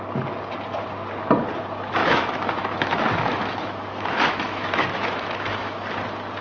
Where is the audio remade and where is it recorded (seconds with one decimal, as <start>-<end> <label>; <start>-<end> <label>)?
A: 0.0-2.0 recorded; 2.0-5.8 remade; 5.8-6.4 recorded